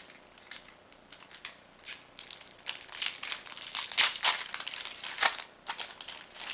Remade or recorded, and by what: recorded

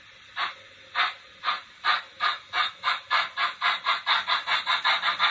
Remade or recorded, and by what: recorded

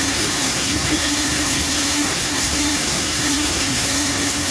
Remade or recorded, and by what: remade, codec, SNAC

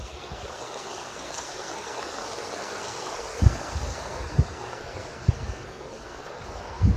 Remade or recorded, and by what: remade, codec, SNAC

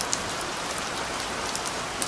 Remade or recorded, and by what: recorded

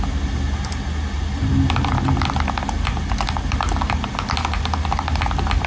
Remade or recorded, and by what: recorded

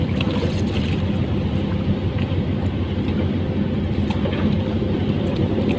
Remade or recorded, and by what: recorded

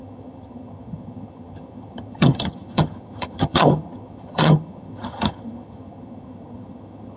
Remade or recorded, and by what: remade, vocoder, HiFi-GAN